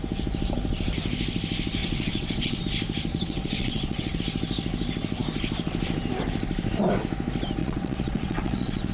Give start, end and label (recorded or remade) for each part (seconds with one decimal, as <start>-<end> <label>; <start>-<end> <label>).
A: 0.0-1.8 recorded; 1.8-2.6 remade; 2.6-3.1 recorded; 3.1-4.2 remade; 4.2-7.6 recorded; 7.6-8.9 remade